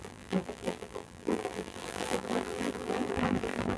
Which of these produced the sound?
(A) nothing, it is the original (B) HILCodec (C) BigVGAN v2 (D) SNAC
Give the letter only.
C